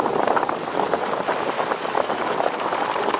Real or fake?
real